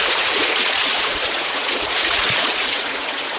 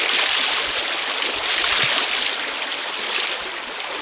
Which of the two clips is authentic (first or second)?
second